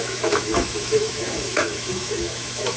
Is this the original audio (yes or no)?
no